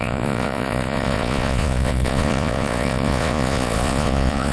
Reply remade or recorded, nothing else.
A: remade